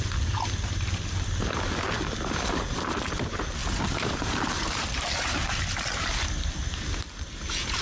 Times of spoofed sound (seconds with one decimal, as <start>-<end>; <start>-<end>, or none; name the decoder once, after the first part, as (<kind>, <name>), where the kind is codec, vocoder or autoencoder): 3.6-5.5 (vocoder, BigVGAN v2)